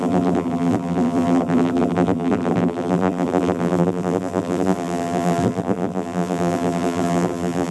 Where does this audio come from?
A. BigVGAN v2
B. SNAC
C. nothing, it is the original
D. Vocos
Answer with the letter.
A